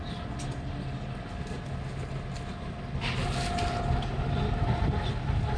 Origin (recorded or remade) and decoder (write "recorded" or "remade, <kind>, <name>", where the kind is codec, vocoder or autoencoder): recorded